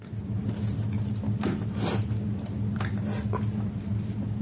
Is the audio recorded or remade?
recorded